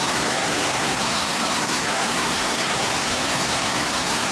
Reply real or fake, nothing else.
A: fake